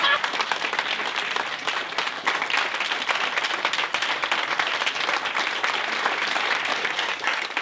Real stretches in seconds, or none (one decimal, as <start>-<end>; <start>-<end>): 0.0-6.7